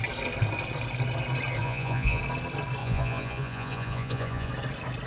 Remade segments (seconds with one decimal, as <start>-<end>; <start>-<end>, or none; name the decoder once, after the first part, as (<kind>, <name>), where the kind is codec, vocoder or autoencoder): 1.6-2.2 (vocoder, Vocos); 2.8-4.5